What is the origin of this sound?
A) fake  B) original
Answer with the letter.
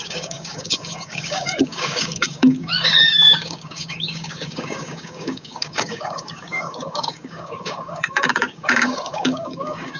A